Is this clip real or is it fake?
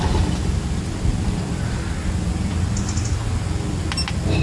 real